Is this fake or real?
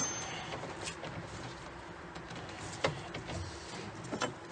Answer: real